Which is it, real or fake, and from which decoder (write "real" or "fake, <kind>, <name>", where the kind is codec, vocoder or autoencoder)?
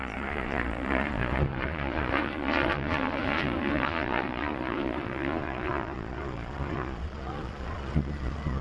fake, vocoder, Vocos